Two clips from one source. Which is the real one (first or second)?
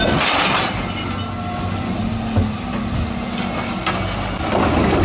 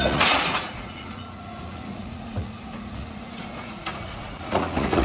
first